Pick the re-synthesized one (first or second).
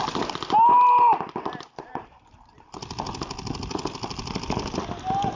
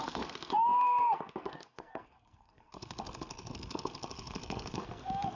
second